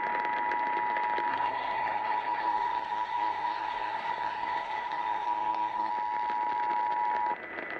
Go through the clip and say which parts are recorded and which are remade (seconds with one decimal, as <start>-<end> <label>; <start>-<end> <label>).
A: 0.0-1.3 recorded; 1.3-5.9 remade; 5.9-7.8 recorded